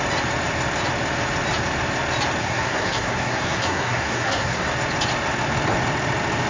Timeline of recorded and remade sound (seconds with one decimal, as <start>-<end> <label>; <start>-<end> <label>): 0.0-2.4 recorded; 2.4-4.7 remade; 4.7-6.5 recorded

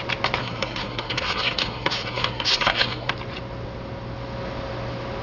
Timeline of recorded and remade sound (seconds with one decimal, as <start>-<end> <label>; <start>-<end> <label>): 0.0-0.4 recorded; 0.4-3.1 remade; 3.1-5.2 recorded

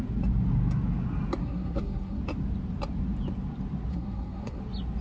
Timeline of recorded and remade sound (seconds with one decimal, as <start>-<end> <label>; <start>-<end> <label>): 0.0-1.4 recorded; 1.4-2.2 remade; 2.2-3.9 recorded; 3.9-4.6 remade; 4.6-5.0 recorded